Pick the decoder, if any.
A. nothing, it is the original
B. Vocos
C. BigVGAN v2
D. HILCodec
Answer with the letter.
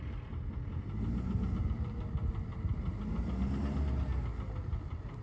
A